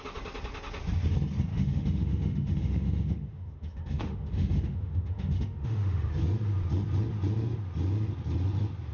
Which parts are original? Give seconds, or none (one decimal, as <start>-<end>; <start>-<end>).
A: 0.0-1.5; 6.1-8.9